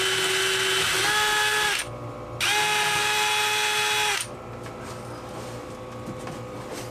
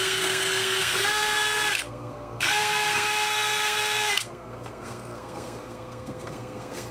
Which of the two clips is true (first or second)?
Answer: first